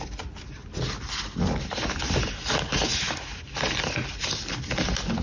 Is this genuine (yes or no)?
yes